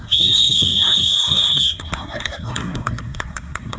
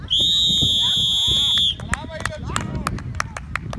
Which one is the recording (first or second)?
second